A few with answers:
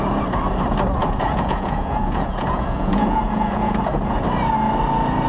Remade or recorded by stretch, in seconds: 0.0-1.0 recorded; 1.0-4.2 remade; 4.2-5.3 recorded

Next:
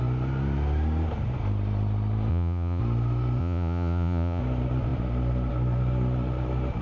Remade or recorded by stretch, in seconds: 0.0-2.3 recorded; 2.3-2.8 remade; 2.8-3.4 recorded; 3.4-4.4 remade; 4.4-6.8 recorded

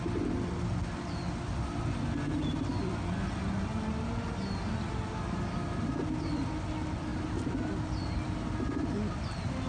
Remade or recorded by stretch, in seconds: 0.0-9.7 recorded

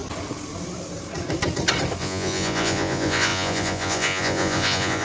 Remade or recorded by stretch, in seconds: 0.0-2.0 recorded; 2.0-5.0 remade

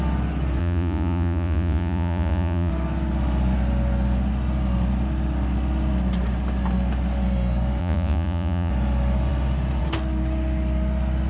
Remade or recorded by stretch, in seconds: 0.0-0.6 recorded; 0.6-2.7 remade; 2.7-7.8 recorded; 7.8-8.7 remade; 8.7-11.3 recorded

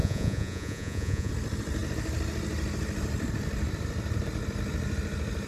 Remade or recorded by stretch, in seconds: 0.0-1.3 remade; 1.3-5.5 recorded

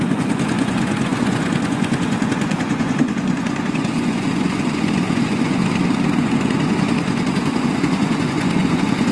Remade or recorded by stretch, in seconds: 0.0-5.6 remade; 5.6-6.2 recorded; 6.2-9.1 remade